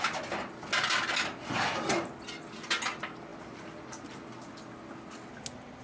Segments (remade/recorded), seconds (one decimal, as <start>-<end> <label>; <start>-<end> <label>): 0.0-3.3 recorded; 3.3-4.6 remade; 4.6-5.8 recorded